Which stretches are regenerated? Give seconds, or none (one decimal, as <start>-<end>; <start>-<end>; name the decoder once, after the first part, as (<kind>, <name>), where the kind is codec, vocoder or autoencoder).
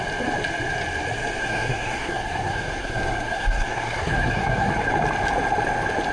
1.4-4.7 (codec, SNAC)